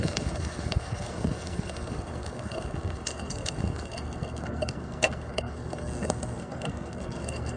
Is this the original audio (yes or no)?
no